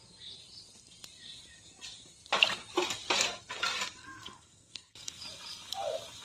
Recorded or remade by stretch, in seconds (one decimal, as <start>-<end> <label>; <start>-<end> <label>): 0.0-4.0 recorded; 4.0-5.2 remade; 5.2-6.2 recorded